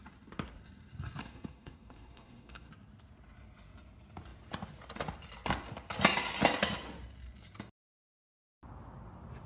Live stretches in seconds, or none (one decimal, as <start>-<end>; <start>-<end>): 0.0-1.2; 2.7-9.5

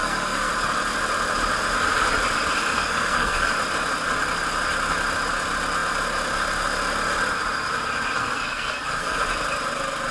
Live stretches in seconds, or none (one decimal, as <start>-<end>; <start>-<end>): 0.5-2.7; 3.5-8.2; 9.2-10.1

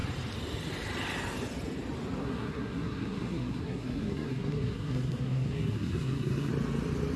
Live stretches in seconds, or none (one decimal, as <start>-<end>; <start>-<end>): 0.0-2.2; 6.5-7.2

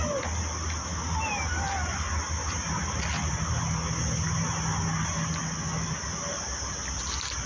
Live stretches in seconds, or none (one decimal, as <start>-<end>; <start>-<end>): 0.0-7.5